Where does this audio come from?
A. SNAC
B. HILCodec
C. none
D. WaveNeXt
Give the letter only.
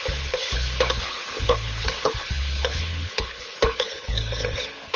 B